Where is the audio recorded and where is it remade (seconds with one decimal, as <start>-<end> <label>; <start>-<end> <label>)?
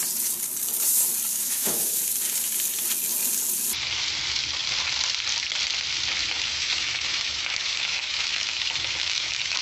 0.0-1.3 recorded; 1.3-2.0 remade; 2.0-6.2 recorded; 6.2-9.6 remade